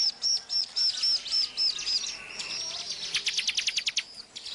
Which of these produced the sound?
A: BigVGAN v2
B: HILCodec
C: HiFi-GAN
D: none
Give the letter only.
D